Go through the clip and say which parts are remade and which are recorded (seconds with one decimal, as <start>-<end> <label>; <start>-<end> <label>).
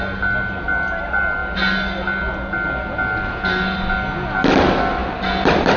0.0-5.8 recorded